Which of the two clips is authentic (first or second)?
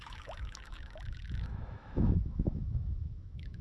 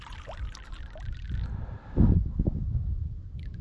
second